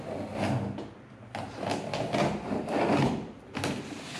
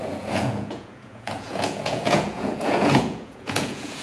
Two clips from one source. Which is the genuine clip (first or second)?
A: first